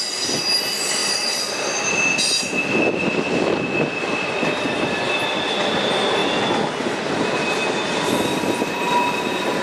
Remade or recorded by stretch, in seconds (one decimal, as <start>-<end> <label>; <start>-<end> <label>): 0.0-9.6 recorded